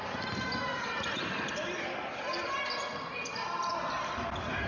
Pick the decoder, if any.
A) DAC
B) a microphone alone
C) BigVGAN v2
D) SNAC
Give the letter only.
B